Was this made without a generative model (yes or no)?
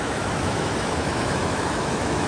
no